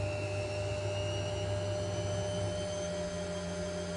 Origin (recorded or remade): recorded